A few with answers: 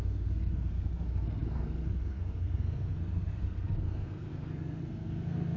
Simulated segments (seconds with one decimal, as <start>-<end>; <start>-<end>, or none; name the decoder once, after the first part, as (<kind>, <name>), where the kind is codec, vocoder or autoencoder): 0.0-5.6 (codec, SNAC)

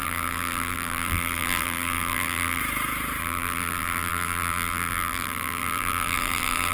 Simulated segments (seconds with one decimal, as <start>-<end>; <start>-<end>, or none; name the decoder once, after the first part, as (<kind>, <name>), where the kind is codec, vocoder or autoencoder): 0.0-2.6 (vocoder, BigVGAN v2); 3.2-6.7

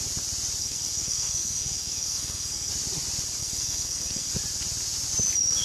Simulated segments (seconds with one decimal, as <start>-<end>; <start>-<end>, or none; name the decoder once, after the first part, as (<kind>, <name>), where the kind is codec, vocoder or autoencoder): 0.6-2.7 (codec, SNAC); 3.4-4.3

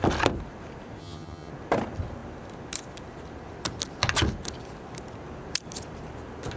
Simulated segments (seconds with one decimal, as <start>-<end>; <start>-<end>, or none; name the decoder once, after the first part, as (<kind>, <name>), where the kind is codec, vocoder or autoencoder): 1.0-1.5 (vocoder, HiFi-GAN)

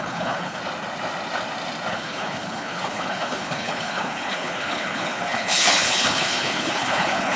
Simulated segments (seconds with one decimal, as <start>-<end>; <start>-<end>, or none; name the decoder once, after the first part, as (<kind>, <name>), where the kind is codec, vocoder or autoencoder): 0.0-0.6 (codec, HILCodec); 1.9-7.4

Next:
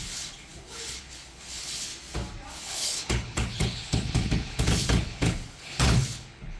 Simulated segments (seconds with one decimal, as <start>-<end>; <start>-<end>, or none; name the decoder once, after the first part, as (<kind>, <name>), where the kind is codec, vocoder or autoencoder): 0.0-1.9 (codec, HILCodec); 2.5-6.6